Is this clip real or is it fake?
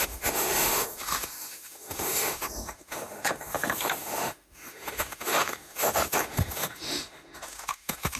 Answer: fake